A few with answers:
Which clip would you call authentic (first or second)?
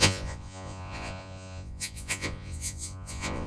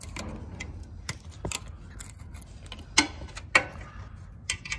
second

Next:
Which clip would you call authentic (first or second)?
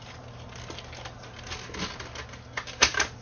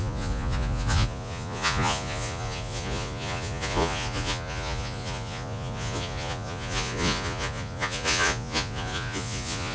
first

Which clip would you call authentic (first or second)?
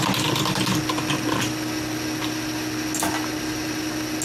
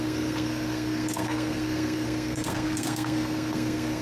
first